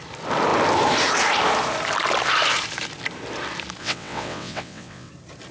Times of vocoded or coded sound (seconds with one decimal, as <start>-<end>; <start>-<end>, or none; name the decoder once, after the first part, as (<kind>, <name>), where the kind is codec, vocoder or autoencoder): 3.8-5.1 (vocoder, WaveNeXt)